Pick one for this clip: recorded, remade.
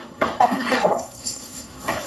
remade